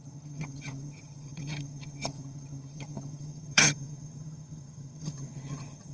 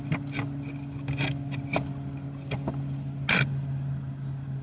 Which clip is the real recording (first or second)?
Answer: second